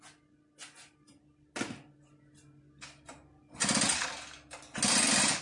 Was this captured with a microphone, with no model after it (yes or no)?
yes